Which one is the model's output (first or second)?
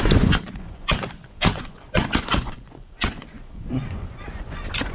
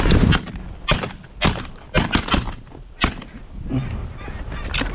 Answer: first